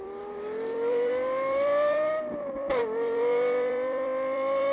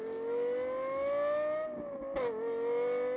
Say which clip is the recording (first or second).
second